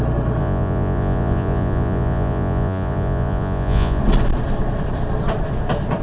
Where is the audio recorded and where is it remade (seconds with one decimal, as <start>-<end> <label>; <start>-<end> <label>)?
0.0-0.4 recorded; 0.4-4.0 remade; 4.0-6.0 recorded